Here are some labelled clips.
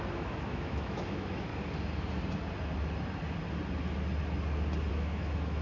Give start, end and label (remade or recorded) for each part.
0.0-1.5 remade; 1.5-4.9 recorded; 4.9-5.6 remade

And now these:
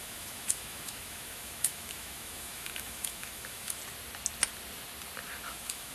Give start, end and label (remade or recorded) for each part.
0.0-3.8 remade; 3.8-5.5 recorded; 5.5-5.9 remade

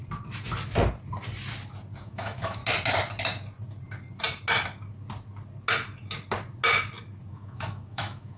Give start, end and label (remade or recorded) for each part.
0.0-2.0 recorded; 2.0-2.6 remade; 2.6-7.3 recorded; 7.3-8.4 remade

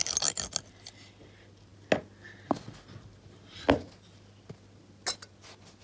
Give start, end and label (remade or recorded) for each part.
0.0-5.8 recorded

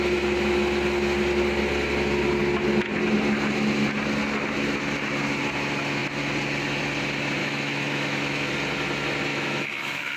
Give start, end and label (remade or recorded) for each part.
0.0-7.4 recorded; 7.4-8.5 remade; 8.5-9.3 recorded; 9.3-10.2 remade